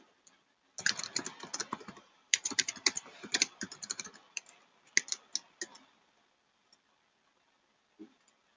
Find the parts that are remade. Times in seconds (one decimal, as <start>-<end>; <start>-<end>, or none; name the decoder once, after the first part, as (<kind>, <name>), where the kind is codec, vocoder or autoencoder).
1.6-4.5 (vocoder, BigVGAN v2)